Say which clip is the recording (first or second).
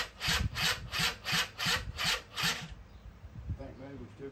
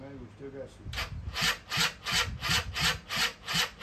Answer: second